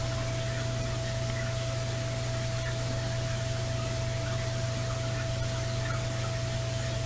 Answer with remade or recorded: recorded